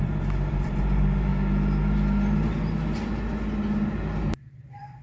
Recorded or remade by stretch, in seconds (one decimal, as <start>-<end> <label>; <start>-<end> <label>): 0.0-1.3 remade; 1.3-4.3 recorded; 4.3-5.0 remade